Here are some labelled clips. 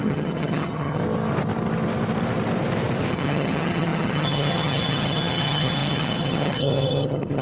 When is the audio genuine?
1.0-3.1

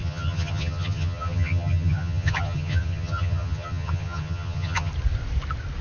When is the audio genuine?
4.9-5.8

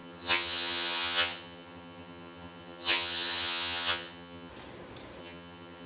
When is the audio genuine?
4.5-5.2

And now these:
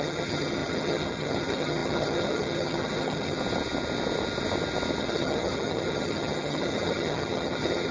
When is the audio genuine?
3.4-5.0

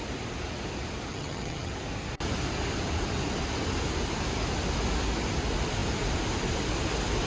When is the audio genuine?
0.0-1.1; 1.7-7.3

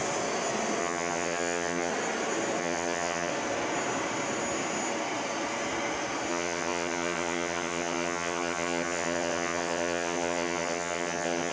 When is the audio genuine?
0.0-0.8; 1.9-2.6; 3.3-6.3

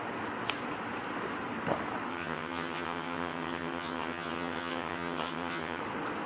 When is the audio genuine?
0.0-2.1; 5.8-6.3

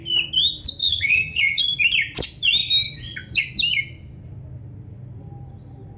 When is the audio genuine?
0.0-0.8; 1.6-6.0